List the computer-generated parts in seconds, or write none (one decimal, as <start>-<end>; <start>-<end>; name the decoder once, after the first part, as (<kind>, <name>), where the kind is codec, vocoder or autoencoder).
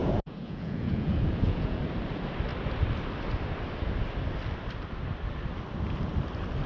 0.0-1.8 (vocoder, Vocos)